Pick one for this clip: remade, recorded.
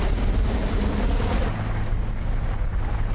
recorded